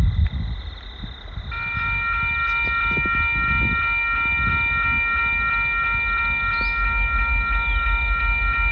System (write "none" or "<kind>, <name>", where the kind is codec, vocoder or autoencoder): none